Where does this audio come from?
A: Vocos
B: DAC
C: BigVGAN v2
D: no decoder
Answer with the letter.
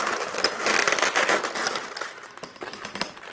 D